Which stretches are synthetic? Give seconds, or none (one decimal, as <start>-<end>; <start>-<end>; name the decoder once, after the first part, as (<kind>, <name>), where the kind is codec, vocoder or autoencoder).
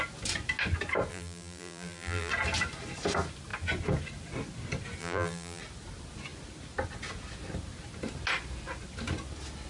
1.1-2.3 (vocoder, BigVGAN v2); 5.0-5.6